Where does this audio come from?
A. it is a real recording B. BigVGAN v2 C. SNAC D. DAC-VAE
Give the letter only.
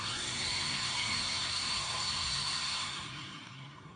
C